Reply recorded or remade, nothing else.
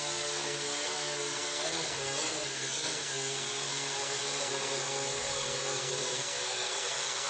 remade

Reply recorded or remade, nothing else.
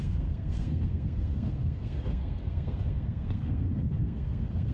remade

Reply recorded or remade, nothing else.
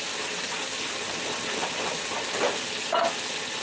recorded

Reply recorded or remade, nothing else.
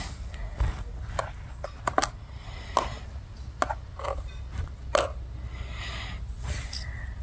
recorded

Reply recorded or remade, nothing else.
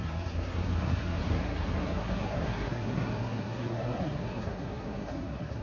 remade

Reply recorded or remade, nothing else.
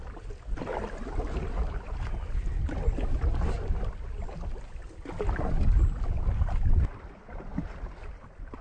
recorded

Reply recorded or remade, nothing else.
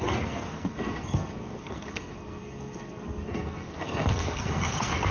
remade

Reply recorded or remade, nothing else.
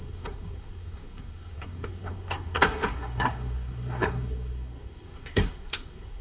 remade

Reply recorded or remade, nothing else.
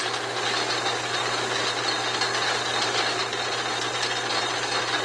recorded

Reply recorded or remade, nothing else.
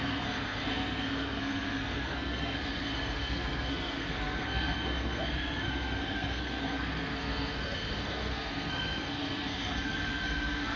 remade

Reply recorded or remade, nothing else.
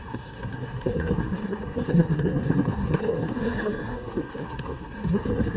remade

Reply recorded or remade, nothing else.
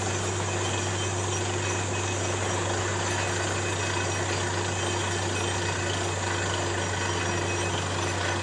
recorded